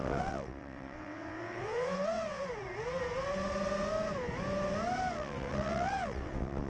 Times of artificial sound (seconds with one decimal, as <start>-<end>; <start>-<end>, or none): 0.0-2.4; 5.1-6.7